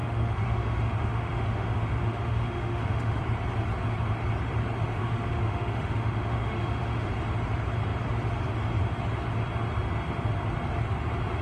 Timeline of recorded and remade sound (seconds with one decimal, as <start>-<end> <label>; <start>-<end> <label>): 0.0-3.2 remade; 3.2-4.9 recorded; 4.9-7.1 remade; 7.1-11.4 recorded